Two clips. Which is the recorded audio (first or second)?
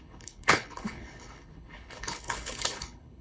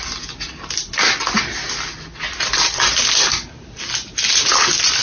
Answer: second